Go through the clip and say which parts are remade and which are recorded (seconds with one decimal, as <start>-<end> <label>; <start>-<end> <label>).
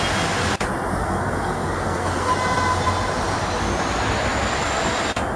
0.0-1.0 recorded; 1.0-2.3 remade; 2.3-5.4 recorded